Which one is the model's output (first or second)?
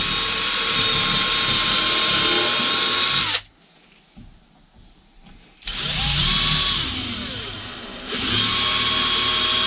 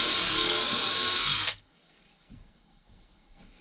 second